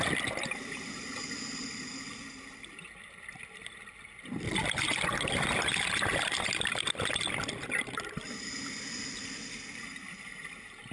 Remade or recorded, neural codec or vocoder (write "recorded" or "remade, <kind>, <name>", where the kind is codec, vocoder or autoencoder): recorded